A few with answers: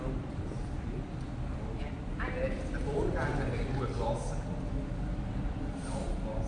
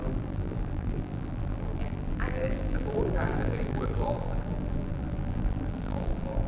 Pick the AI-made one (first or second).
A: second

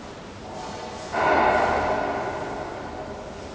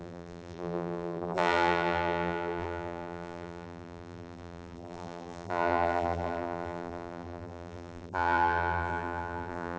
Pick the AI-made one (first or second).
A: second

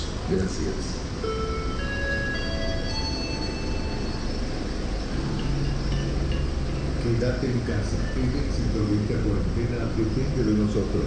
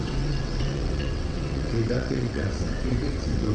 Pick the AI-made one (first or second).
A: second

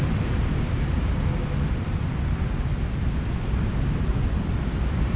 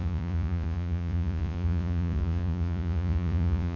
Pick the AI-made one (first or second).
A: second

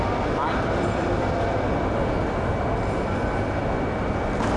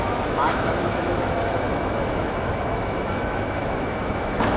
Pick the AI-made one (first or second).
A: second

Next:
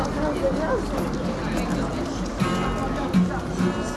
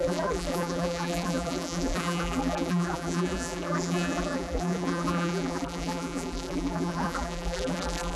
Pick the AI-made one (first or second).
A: second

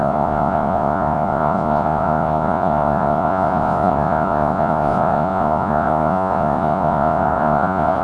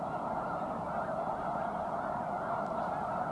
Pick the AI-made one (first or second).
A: first